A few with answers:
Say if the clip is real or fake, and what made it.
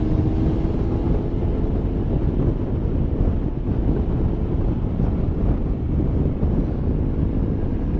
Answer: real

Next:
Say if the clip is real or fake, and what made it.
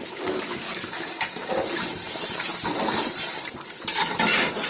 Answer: fake, vocoder, BigVGAN v2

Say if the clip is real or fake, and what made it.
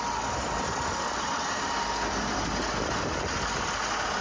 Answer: real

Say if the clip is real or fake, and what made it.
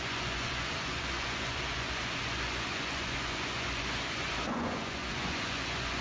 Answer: fake, vocoder, Vocos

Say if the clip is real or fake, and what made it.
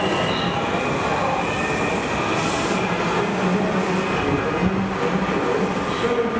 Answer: real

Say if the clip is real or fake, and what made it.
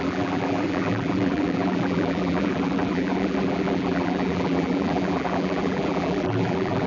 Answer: fake, vocoder, BigVGAN v2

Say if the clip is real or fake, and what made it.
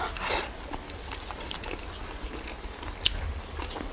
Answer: real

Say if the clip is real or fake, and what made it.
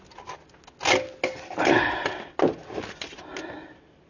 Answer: real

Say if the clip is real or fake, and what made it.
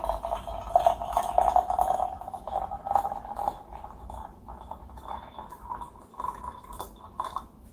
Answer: fake, autoencoder, DAC-VAE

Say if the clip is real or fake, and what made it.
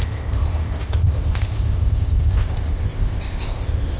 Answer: fake, codec, ZipCodec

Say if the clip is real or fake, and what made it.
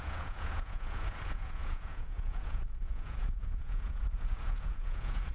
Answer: fake, vocoder, Vocos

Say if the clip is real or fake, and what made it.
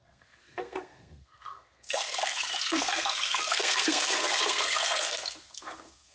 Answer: fake, codec, SNAC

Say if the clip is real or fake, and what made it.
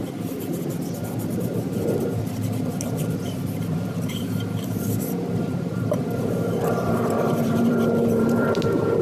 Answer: fake, vocoder, BigVGAN v2